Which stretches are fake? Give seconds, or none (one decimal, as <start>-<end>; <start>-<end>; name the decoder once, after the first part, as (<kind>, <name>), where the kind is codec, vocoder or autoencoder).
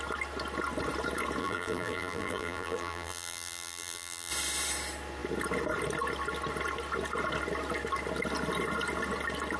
1.4-4.3 (vocoder, BigVGAN v2)